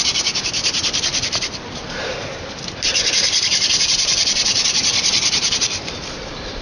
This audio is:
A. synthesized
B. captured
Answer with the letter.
A